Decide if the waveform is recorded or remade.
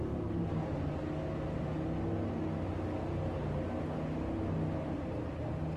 recorded